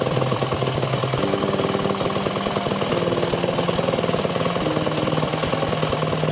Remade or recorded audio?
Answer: recorded